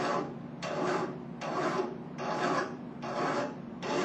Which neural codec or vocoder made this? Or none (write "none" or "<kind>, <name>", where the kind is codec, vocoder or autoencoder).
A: vocoder, BigVGAN v2